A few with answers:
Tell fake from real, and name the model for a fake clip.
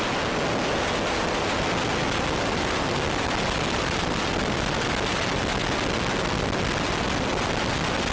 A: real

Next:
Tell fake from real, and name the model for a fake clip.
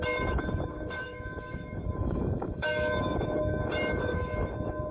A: fake, autoencoder, DAC-VAE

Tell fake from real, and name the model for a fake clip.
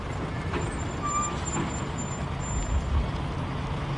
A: real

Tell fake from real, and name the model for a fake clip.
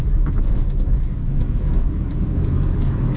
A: fake, codec, DAC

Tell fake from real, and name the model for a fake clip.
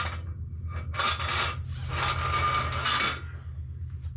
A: real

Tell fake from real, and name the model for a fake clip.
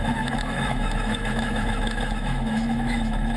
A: fake, autoencoder, DAC-VAE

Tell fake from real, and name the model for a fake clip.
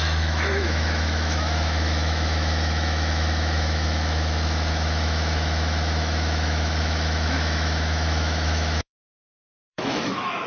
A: fake, autoencoder, DAC-VAE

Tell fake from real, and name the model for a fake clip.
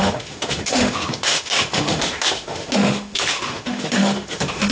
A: fake, autoencoder, DAC-VAE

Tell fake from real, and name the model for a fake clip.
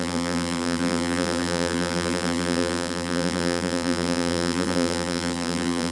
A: fake, vocoder, BigVGAN v2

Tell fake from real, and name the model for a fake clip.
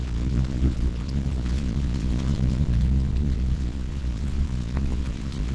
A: fake, vocoder, Vocos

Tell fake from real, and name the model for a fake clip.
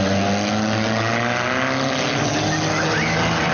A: real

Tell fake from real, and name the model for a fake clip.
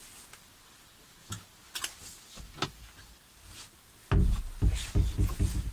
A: real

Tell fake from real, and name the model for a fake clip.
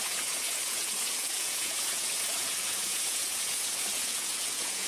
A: fake, vocoder, Vocos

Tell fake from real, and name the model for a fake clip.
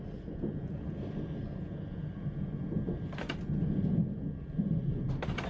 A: real